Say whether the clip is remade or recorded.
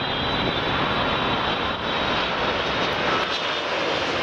recorded